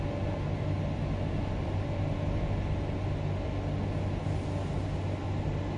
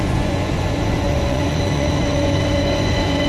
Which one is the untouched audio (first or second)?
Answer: first